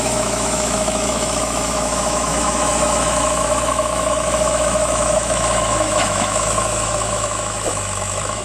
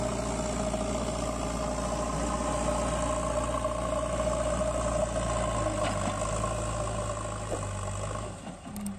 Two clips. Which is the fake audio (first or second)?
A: first